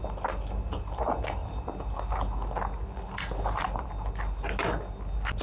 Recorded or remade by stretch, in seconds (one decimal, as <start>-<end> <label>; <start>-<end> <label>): 0.0-5.4 recorded